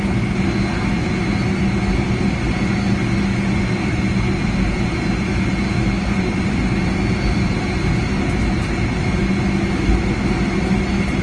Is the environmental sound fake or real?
real